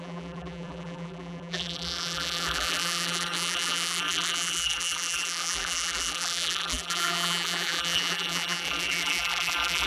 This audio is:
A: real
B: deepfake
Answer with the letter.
B